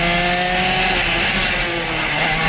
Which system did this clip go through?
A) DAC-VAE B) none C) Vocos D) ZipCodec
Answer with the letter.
B